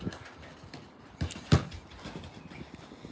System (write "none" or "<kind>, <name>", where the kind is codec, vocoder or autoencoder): none